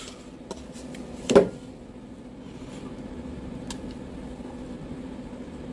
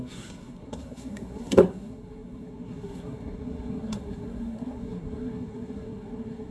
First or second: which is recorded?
first